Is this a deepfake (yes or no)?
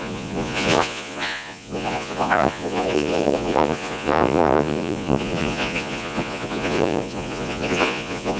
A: yes